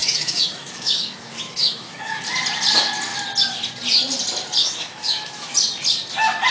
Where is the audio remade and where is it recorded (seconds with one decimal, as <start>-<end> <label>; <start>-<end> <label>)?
0.0-2.2 remade; 2.2-4.6 recorded; 4.6-5.5 remade; 5.5-6.5 recorded